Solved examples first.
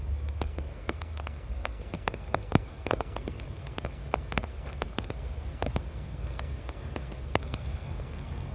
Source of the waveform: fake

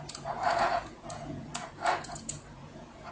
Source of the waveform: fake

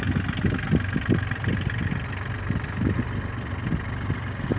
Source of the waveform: real